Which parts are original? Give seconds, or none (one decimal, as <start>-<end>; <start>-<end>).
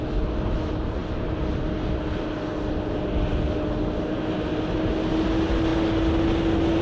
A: 0.0-6.8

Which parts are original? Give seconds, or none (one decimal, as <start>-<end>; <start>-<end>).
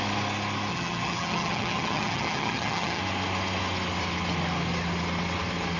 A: 0.0-0.7; 3.0-5.8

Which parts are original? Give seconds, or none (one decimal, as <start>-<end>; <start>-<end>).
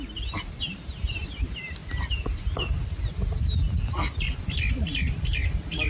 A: 0.0-5.9